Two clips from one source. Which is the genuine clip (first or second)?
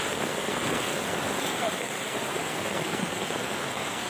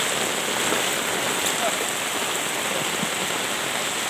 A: second